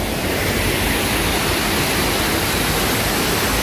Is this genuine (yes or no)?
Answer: yes